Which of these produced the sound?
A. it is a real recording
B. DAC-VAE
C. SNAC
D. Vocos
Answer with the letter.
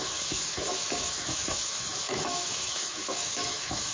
B